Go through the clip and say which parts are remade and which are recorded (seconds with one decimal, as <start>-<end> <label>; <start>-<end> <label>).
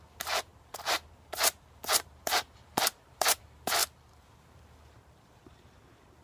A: 0.0-3.8 remade; 3.8-4.4 recorded; 4.4-6.2 remade